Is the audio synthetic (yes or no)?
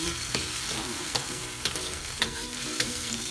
yes